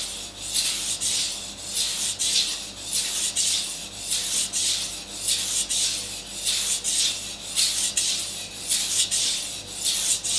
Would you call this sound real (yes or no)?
yes